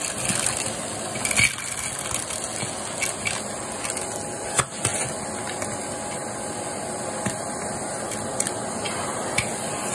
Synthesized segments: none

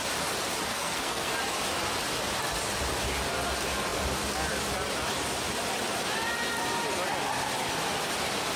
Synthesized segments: 0.7-1.3 (codec, SNAC)

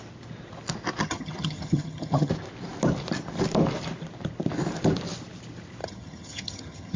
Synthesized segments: 1.0-2.3 (vocoder, HiFi-GAN); 5.8-7.0

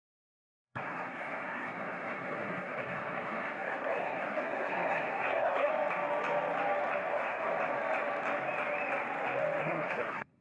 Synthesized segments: 0.0-5.7 (codec, SNAC); 7.1-7.5; 9.6-10.4